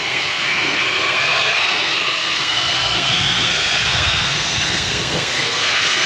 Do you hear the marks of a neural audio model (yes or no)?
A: yes